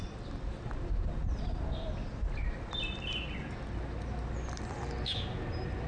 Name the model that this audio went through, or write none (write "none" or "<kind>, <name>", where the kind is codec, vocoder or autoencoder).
none